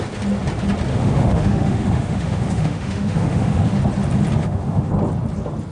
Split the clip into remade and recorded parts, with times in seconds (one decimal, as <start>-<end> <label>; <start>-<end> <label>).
0.0-0.9 recorded; 0.9-3.8 remade; 3.8-4.4 recorded; 4.4-4.9 remade; 4.9-5.7 recorded